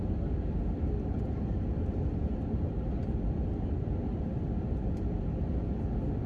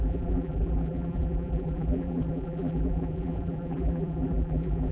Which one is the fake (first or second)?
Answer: second